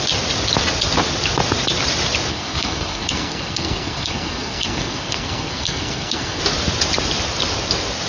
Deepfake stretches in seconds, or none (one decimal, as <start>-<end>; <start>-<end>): 2.3-6.4